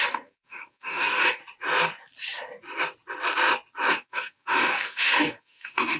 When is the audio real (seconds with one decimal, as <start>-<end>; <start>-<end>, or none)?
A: 1.4-3.9